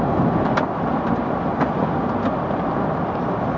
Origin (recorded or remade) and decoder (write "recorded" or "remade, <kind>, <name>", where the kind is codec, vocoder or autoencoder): recorded